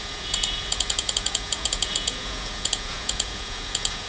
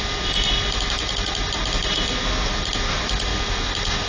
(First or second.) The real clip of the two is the second